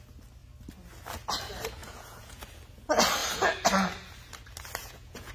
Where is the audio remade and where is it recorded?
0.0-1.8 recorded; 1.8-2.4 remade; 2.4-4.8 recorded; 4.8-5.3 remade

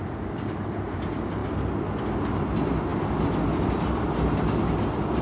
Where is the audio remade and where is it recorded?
0.0-5.2 recorded

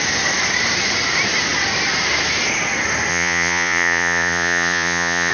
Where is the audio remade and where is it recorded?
0.0-3.1 recorded; 3.1-5.3 remade

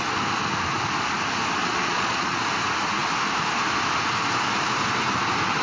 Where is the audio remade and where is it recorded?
0.0-1.6 recorded; 1.6-2.4 remade; 2.4-5.6 recorded

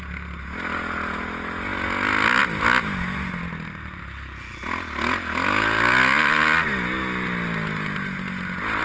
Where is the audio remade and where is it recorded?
0.0-8.8 recorded